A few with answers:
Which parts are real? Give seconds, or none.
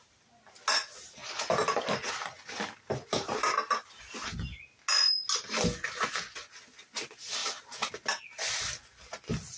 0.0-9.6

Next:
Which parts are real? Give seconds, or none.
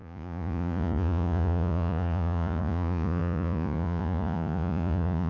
none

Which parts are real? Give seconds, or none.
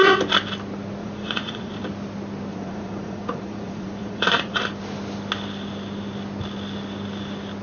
0.0-1.0; 1.7-2.5; 4.6-7.6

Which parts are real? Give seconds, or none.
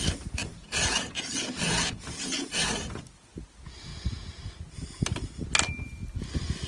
0.0-0.4; 2.7-3.9; 4.7-6.7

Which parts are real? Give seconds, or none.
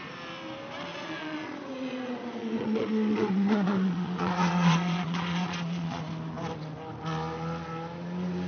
0.0-0.9; 6.0-8.5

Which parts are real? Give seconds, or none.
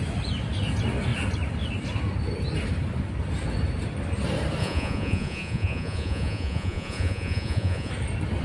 0.0-4.6; 7.9-8.4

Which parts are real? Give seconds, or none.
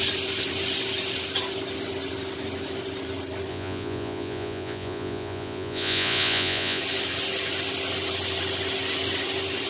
0.0-3.5; 6.8-9.7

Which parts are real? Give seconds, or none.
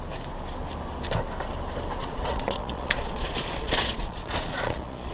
0.0-2.0